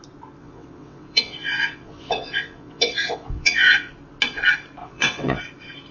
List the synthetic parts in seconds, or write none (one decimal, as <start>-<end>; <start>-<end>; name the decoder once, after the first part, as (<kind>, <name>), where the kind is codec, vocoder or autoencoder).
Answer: 0.4-3.9 (vocoder, WaveNeXt); 4.8-5.4